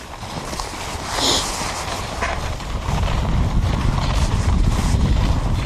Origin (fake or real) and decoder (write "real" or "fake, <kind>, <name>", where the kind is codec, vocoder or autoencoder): real